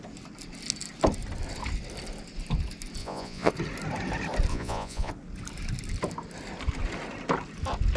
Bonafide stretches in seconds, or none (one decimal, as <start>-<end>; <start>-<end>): 0.0-3.0; 3.5-4.5; 5.1-8.0